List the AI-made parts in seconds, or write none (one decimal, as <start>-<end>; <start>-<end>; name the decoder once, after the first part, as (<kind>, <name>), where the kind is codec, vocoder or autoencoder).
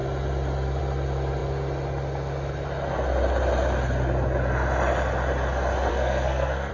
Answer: 5.9-6.7 (codec, SNAC)